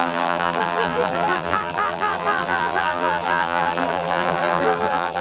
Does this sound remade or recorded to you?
remade